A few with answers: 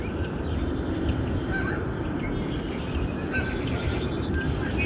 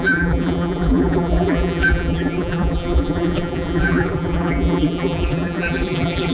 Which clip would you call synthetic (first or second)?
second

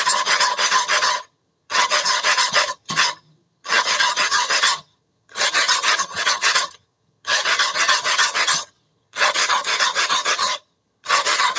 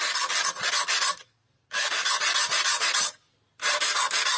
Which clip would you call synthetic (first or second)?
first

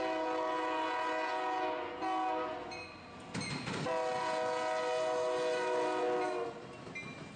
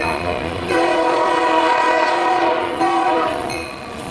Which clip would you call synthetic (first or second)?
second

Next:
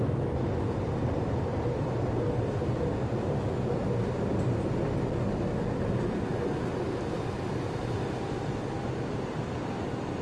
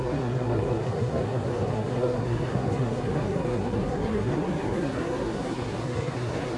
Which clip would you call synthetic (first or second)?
second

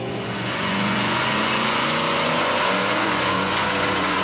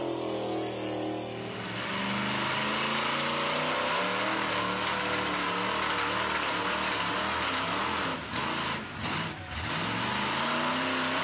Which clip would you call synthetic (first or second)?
first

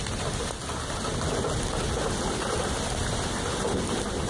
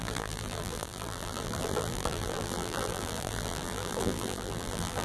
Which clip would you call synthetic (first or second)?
second